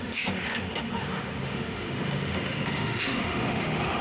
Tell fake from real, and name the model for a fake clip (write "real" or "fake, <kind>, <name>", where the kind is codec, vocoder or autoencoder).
fake, autoencoder, DAC-VAE